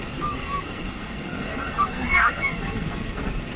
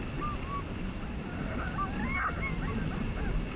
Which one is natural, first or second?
second